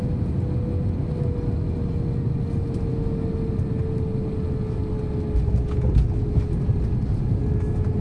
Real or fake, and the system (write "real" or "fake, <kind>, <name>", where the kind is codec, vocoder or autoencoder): real